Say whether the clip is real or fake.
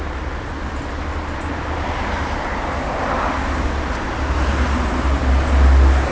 real